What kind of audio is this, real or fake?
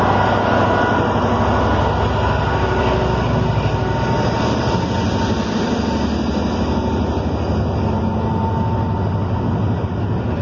real